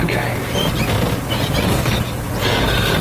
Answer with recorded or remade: recorded